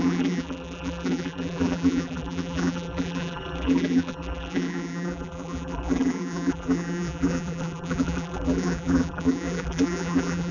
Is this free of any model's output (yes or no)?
no